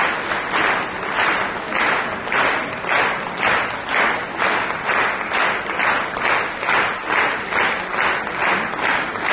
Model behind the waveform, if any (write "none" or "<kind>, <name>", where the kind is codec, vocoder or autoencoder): none